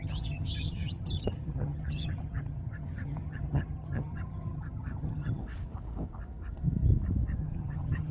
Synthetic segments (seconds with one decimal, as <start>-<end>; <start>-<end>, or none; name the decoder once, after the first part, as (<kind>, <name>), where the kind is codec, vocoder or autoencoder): 0.0-5.4 (vocoder, HiFi-GAN); 7.4-8.1